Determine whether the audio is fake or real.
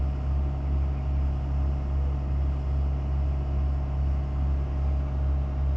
real